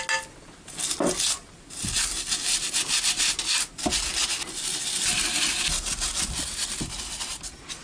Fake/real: real